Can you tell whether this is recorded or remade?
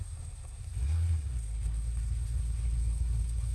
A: remade